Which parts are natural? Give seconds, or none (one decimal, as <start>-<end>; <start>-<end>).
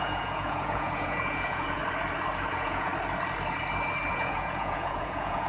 1.8-2.5; 2.9-4.1